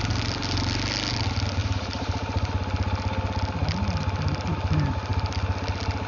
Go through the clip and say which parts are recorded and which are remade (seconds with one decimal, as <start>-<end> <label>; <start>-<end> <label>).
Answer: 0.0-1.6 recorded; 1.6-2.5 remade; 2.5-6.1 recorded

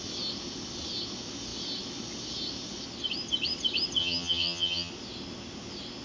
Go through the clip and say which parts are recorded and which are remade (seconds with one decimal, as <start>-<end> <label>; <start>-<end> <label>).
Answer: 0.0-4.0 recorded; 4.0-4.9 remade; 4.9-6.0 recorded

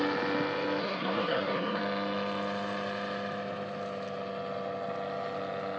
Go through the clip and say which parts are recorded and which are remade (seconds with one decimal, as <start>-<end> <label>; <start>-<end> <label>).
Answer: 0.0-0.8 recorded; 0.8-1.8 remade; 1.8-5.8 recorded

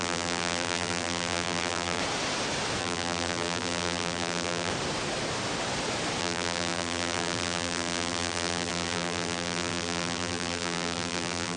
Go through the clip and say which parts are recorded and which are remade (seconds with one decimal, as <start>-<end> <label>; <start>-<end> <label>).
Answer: 0.0-2.0 remade; 2.0-2.8 recorded; 2.8-4.7 remade; 4.7-6.2 recorded; 6.2-11.6 remade

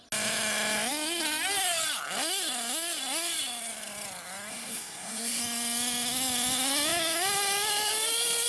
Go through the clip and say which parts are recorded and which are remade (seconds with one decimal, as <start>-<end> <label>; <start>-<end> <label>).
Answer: 0.0-4.5 recorded; 4.5-5.4 remade; 5.4-8.5 recorded

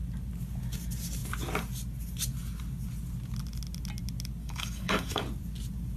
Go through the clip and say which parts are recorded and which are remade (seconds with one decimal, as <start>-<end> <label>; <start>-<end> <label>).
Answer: 0.0-4.4 recorded; 4.4-5.2 remade; 5.2-6.0 recorded

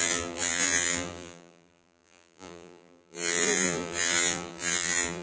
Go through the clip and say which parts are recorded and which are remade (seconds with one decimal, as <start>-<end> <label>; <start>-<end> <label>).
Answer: 0.0-5.2 remade

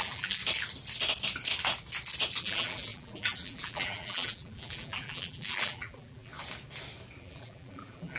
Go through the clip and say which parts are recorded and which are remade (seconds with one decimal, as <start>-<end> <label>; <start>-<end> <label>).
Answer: 0.0-0.4 remade; 0.4-2.4 recorded; 2.4-6.3 remade; 6.3-7.2 recorded; 7.2-8.2 remade